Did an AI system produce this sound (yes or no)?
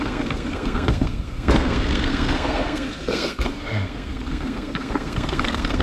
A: yes